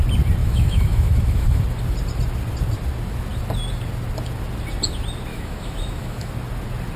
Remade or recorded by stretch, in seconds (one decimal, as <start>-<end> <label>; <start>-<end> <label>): 0.0-0.4 recorded; 0.4-1.6 remade; 1.6-5.3 recorded; 5.3-6.3 remade; 6.3-7.0 recorded